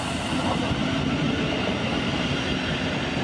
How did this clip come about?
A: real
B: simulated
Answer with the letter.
A